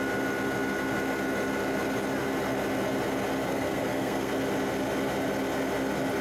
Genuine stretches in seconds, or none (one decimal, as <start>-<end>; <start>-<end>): 0.0-3.5; 4.3-6.2